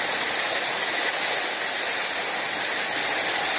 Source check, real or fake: real